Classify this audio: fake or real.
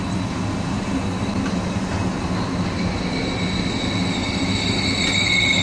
real